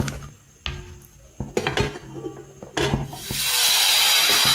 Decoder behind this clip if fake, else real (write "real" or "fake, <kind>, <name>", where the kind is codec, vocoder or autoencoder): real